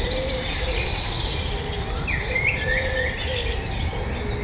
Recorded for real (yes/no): yes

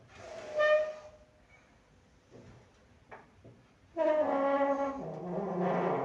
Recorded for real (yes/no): yes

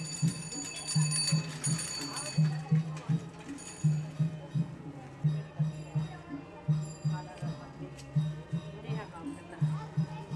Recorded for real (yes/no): yes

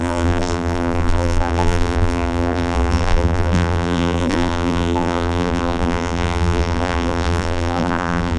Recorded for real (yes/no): no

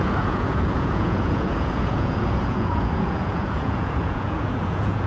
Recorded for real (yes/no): no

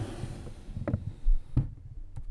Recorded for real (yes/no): yes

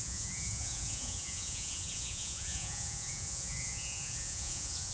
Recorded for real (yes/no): no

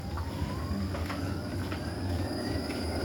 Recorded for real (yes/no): no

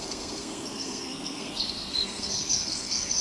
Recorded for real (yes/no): no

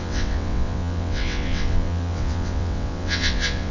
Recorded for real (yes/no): no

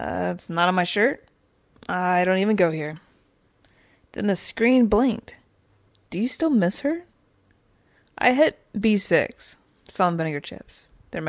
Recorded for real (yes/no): no